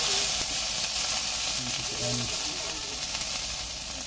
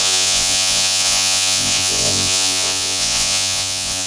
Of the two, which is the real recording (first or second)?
first